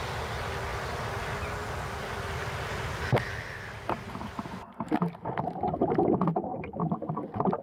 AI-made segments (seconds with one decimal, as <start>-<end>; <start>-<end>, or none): none